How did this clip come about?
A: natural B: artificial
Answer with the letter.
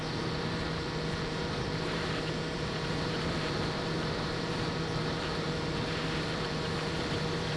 B